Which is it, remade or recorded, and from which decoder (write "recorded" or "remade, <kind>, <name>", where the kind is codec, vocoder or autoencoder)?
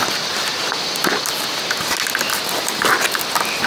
recorded